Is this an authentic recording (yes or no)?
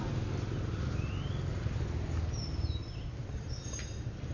yes